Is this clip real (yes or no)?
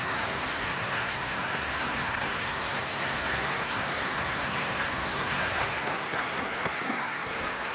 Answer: no